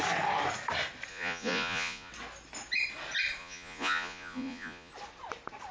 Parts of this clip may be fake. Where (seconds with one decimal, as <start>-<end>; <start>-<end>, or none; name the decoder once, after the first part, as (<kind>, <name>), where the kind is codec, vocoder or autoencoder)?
1.1-2.1 (vocoder, Vocos); 3.4-4.9